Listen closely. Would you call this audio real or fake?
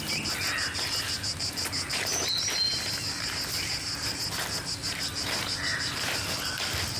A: real